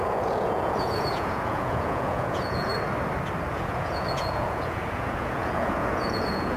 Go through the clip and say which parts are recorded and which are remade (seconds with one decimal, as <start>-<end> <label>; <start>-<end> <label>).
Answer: 0.0-2.7 remade; 2.7-3.5 recorded; 3.5-6.6 remade